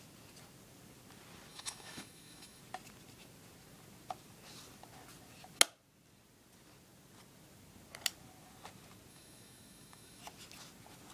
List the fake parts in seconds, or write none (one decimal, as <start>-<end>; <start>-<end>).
1.5-2.6; 9.1-10.2